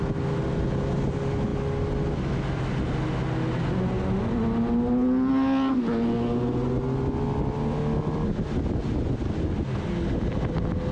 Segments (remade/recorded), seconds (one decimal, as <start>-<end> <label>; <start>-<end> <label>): 0.0-10.9 recorded